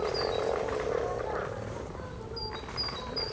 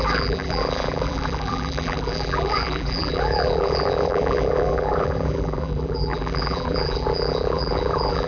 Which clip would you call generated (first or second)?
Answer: second